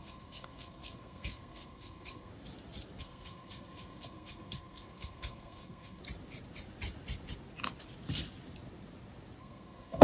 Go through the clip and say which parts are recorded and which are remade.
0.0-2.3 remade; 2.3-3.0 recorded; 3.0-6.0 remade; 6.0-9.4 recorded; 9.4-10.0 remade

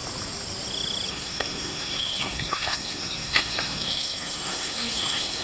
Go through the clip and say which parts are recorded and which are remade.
0.0-1.1 recorded; 1.1-5.4 remade

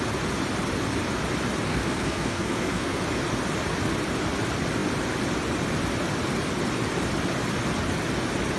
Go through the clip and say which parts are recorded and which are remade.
0.0-1.7 recorded; 1.7-3.0 remade; 3.0-8.6 recorded

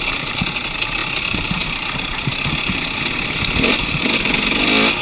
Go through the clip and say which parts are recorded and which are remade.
0.0-5.0 recorded

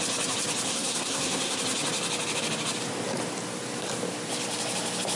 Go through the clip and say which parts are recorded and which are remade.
0.0-0.7 recorded; 0.7-1.6 remade; 1.6-5.2 recorded

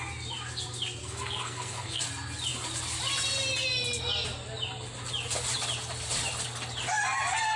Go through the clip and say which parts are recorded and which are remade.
0.0-1.0 recorded; 1.0-2.0 remade; 2.0-7.6 recorded

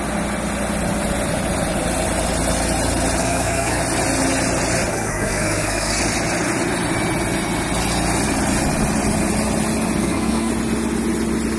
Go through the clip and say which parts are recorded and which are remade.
0.0-3.2 recorded; 3.2-3.8 remade; 3.8-4.9 recorded; 4.9-6.0 remade; 6.0-10.0 recorded; 10.0-10.5 remade; 10.5-11.6 recorded

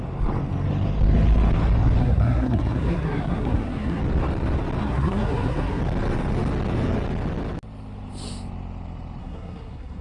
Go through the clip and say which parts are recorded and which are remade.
0.0-2.0 recorded; 2.0-4.0 remade; 4.0-4.8 recorded; 4.8-5.8 remade; 5.8-9.2 recorded; 9.2-10.0 remade